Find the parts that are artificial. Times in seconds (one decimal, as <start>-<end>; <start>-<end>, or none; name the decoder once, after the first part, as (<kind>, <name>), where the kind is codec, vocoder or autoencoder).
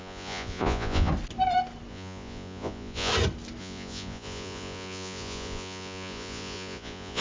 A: 0.0-1.1 (vocoder, Vocos); 1.9-3.1; 3.6-7.2